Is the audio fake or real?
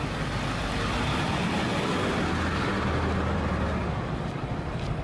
real